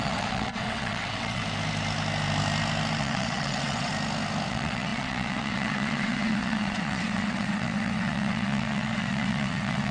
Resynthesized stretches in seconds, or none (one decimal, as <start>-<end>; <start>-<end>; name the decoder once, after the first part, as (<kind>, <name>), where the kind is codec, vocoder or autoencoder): 0.0-1.4 (vocoder, WaveNeXt); 3.0-3.9; 4.5-9.9